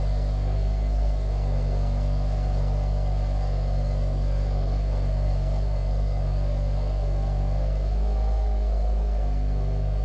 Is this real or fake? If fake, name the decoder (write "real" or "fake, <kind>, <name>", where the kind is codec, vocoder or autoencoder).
fake, codec, SNAC